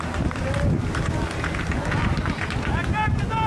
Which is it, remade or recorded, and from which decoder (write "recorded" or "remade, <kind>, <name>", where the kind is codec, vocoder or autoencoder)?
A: recorded